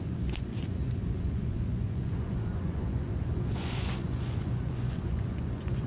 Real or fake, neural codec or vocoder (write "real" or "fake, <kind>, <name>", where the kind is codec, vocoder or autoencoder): fake, vocoder, Vocos